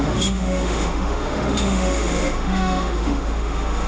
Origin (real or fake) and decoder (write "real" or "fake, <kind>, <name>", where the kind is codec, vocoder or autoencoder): fake, autoencoder, DAC-VAE